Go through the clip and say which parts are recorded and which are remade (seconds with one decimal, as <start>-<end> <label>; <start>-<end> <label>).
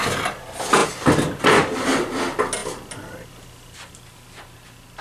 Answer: 0.0-5.0 recorded